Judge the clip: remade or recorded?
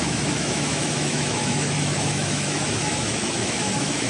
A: remade